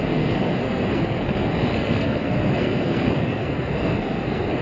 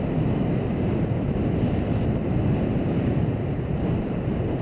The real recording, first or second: second